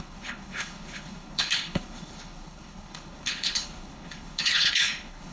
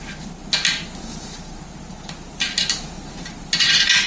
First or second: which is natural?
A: second